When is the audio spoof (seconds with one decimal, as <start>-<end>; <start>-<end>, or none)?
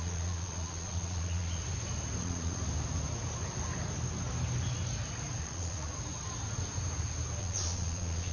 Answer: 0.0-1.6; 2.2-2.6; 5.4-5.9; 7.4-8.3